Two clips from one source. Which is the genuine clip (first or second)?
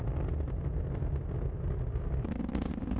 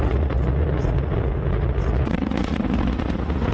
first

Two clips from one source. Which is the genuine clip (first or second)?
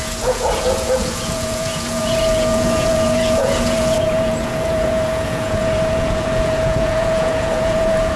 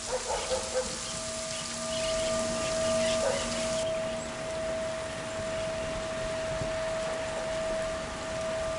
second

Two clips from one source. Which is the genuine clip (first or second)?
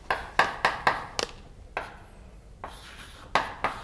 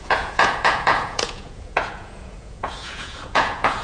first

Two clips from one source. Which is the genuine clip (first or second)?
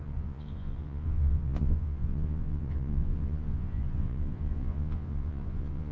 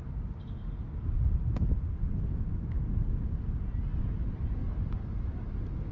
second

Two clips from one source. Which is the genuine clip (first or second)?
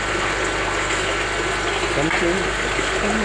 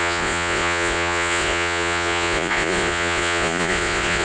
first